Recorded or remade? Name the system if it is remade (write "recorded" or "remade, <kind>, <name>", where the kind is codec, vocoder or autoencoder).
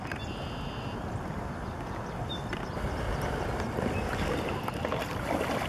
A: recorded